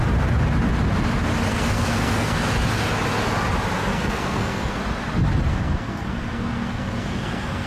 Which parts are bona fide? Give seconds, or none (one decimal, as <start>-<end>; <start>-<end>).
0.0-1.5; 2.5-3.9; 4.8-5.5